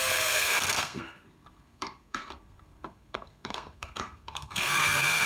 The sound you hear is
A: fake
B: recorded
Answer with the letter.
A